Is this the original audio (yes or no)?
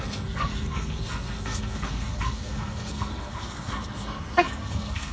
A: no